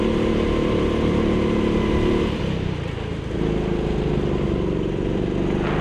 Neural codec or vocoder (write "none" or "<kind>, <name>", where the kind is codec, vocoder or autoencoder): none